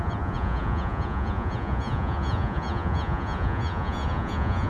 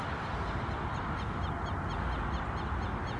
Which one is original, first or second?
second